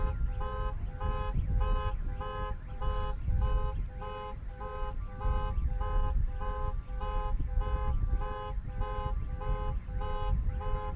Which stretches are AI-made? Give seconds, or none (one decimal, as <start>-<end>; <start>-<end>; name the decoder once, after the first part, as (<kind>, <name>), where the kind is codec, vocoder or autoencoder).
none